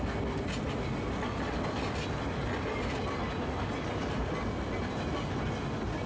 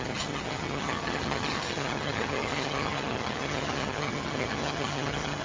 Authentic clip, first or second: first